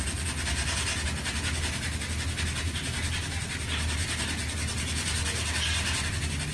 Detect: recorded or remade recorded